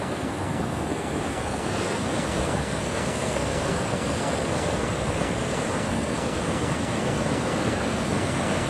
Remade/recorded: remade